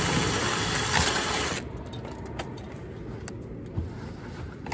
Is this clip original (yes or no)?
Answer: yes